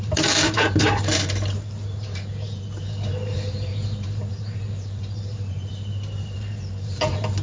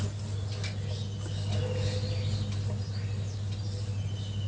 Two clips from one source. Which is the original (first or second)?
second